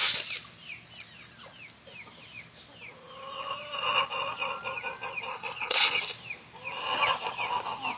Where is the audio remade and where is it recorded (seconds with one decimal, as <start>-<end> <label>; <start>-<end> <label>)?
0.0-5.3 recorded; 5.3-6.0 remade; 6.0-8.0 recorded